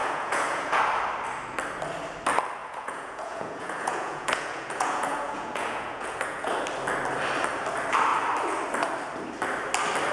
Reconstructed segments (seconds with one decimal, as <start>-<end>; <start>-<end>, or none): 0.0-0.8; 2.6-6.5